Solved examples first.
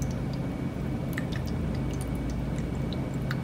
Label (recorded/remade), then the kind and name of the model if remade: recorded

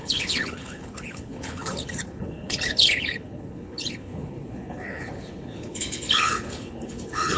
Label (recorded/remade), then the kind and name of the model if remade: remade, codec, HILCodec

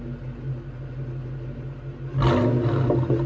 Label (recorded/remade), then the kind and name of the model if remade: recorded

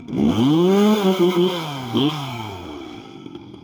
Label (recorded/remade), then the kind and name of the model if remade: remade, codec, SNAC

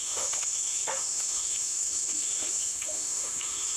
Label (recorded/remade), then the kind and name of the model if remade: remade, autoencoder, DAC-VAE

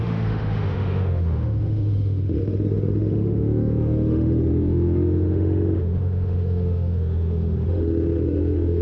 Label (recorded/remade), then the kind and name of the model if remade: remade, autoencoder, DAC-VAE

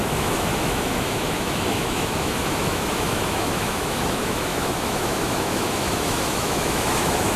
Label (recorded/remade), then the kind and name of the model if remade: remade, autoencoder, DAC-VAE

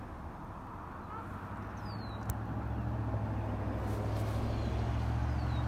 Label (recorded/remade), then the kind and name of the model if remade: recorded